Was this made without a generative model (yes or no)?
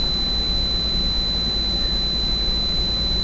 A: yes